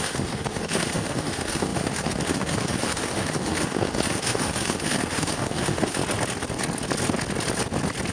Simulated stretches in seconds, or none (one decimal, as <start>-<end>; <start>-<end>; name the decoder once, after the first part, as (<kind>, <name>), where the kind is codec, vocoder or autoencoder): 0.0-6.0 (autoencoder, DAC-VAE)